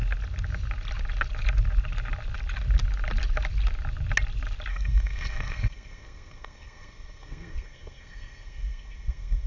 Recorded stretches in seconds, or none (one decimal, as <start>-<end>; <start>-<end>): 0.0-4.7